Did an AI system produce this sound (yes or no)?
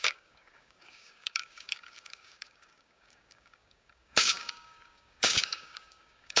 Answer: yes